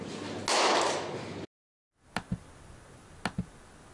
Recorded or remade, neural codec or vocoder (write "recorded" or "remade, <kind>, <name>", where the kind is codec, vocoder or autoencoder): recorded